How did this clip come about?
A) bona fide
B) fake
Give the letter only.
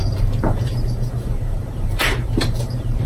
B